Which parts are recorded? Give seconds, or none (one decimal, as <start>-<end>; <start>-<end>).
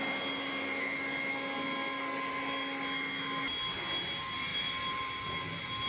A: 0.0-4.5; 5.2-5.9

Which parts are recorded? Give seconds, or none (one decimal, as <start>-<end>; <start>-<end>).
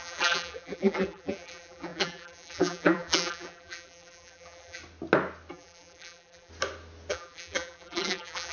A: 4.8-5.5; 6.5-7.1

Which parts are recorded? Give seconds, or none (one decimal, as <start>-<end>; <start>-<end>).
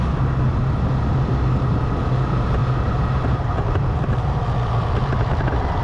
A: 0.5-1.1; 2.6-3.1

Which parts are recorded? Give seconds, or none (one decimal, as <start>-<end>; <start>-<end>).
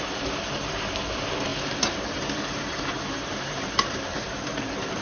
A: none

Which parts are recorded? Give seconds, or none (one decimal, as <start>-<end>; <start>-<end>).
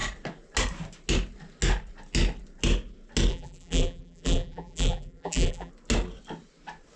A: 0.0-3.3; 5.7-7.0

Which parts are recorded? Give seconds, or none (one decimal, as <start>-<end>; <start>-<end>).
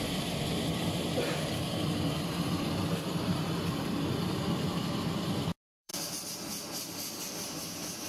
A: 5.9-7.2